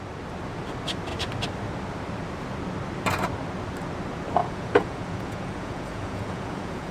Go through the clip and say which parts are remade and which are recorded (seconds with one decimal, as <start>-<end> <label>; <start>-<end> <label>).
0.0-4.4 recorded; 4.4-6.9 remade